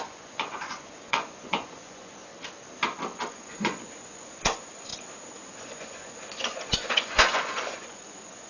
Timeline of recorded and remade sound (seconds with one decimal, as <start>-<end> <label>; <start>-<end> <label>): 0.0-2.3 remade; 2.3-3.3 recorded; 3.3-4.9 remade; 4.9-5.4 recorded; 5.4-8.5 remade